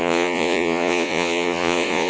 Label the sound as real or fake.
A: fake